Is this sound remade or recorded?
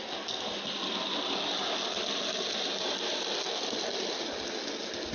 recorded